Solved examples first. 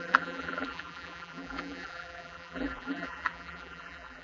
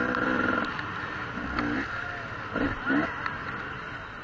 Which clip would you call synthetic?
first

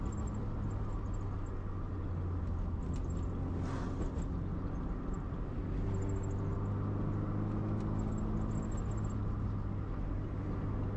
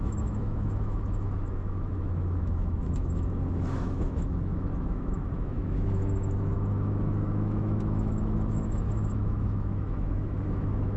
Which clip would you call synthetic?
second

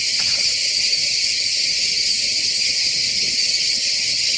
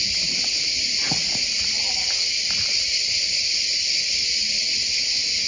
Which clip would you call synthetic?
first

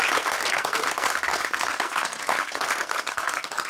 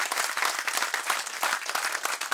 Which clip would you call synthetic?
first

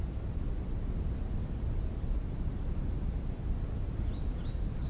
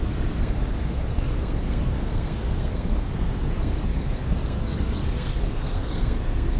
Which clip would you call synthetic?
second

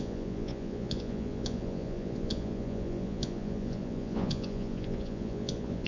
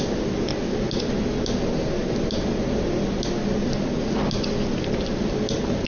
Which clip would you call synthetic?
first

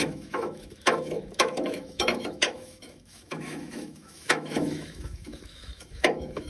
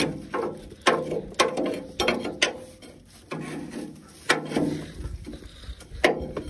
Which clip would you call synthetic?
first